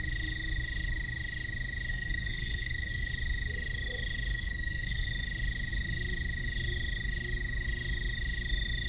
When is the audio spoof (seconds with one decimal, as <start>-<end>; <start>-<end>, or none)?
1.9-3.1; 4.3-5.1